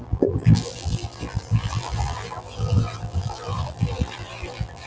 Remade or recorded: remade